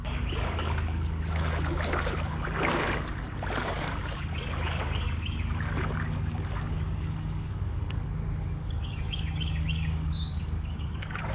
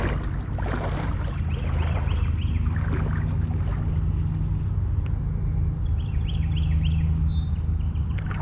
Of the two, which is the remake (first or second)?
first